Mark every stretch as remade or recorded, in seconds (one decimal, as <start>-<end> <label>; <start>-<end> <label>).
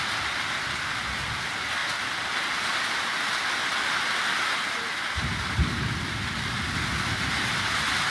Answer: 0.0-8.1 recorded